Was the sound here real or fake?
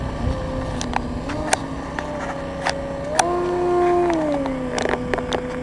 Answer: real